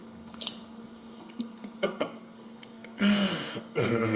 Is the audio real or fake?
fake